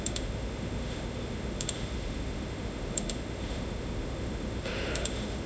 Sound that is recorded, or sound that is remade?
remade